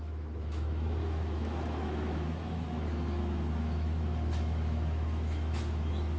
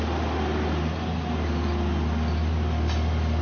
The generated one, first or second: first